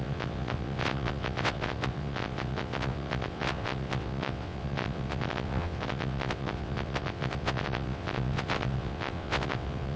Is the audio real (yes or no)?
no